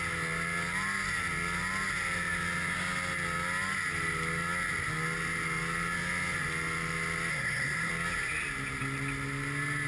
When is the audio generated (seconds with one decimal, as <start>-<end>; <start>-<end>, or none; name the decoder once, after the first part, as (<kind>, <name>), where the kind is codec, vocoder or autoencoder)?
7.3-7.9 (codec, SNAC)